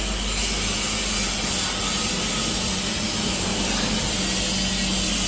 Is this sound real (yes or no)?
yes